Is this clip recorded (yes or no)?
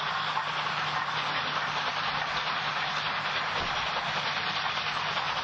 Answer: yes